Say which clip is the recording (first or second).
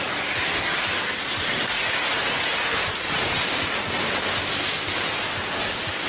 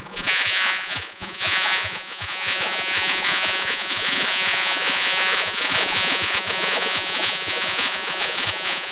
first